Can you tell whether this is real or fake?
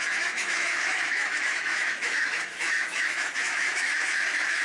fake